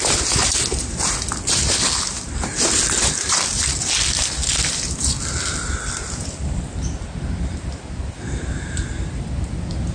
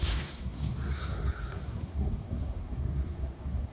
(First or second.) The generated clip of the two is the second